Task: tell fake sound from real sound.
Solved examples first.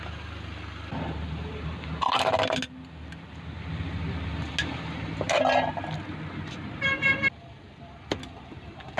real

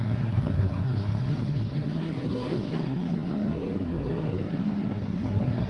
fake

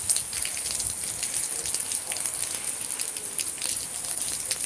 real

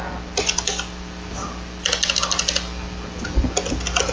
real